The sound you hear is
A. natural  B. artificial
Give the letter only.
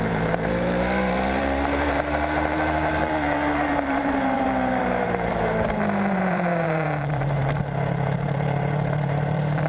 B